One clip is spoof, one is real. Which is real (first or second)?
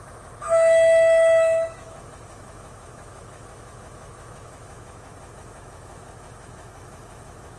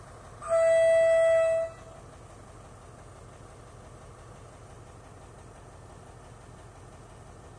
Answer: second